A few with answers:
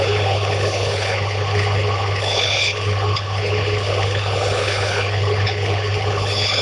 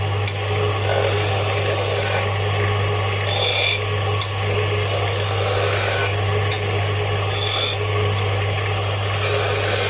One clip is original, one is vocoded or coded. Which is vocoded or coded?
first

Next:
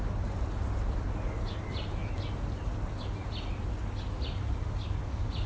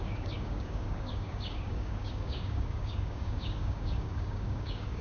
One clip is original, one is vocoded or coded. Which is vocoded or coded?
second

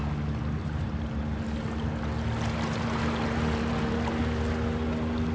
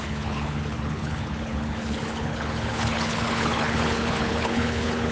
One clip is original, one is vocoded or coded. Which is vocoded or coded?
second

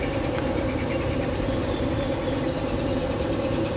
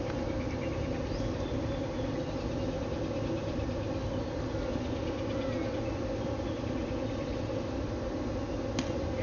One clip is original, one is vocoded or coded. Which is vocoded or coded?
first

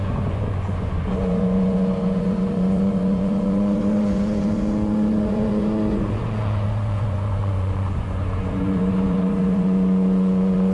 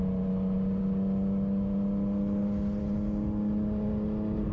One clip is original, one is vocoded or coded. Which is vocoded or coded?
first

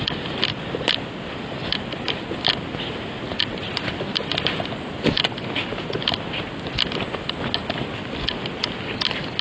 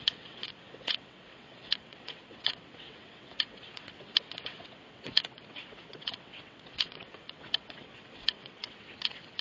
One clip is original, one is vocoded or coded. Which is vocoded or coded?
second